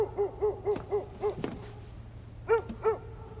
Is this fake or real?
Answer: real